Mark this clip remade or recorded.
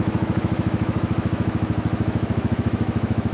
remade